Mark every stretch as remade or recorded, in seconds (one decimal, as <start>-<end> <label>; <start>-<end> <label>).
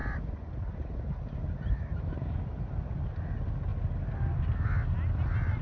0.0-2.4 remade; 2.4-5.6 recorded